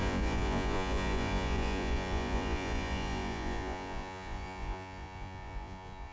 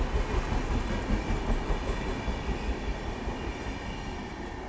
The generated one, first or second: first